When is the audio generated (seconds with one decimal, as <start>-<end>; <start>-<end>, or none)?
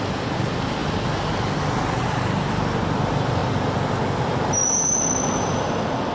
none